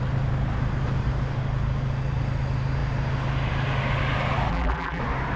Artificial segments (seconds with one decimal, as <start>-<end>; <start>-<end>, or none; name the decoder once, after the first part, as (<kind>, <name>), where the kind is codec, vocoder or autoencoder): 4.5-5.0 (vocoder, BigVGAN v2)